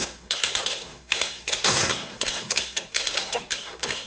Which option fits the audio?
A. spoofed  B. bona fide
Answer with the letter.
A